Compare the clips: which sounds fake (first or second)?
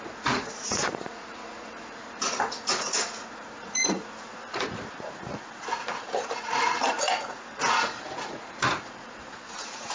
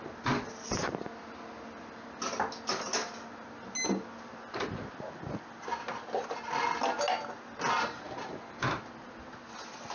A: first